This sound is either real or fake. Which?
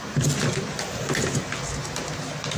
real